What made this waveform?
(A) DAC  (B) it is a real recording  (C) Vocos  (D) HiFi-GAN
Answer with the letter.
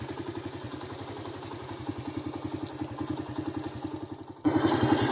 B